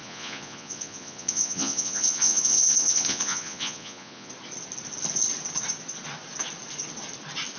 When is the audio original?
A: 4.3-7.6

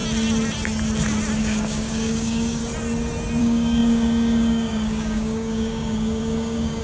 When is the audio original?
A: 0.0-1.4; 2.6-3.4

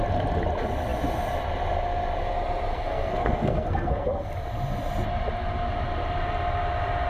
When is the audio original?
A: 0.0-2.7; 4.3-7.1

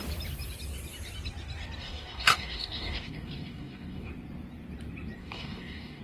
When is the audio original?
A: 0.0-1.8; 4.1-5.2

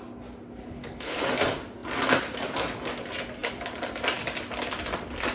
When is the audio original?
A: 0.0-0.6; 1.2-5.3

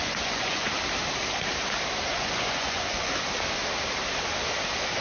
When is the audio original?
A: 0.7-2.1; 3.1-5.0